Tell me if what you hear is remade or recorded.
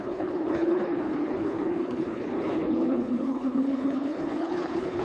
remade